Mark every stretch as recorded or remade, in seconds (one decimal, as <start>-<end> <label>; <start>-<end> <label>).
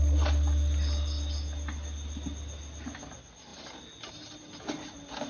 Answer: 0.0-5.3 recorded